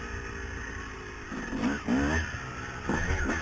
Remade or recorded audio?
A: recorded